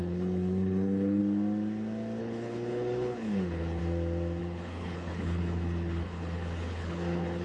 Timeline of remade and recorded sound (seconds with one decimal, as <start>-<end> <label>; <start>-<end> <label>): 0.0-1.2 remade; 1.2-2.2 recorded; 2.2-3.8 remade; 3.8-4.4 recorded; 4.4-7.4 remade